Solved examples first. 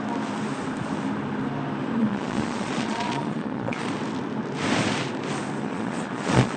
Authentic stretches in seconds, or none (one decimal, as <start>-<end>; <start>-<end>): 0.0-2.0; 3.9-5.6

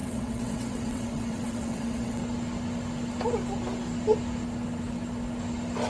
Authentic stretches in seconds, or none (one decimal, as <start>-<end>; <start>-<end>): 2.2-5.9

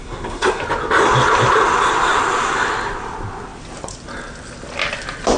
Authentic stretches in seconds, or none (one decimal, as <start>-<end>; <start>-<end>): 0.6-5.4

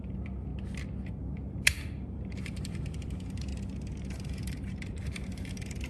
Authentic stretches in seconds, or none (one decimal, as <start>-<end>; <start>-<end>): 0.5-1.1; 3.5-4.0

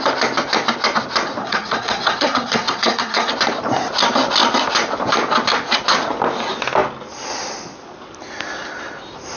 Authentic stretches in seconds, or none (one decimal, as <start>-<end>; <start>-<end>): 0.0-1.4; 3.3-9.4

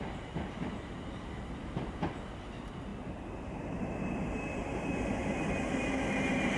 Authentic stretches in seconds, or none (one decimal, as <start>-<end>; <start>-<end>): 0.0-6.6

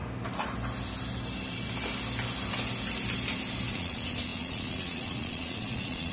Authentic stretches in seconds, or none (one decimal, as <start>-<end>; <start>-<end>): 0.0-3.7